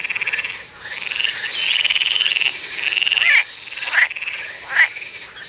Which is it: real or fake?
real